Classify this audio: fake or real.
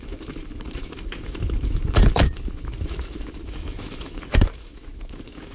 fake